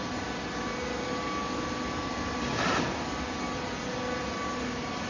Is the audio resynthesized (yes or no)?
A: no